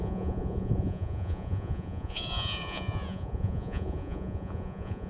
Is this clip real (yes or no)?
no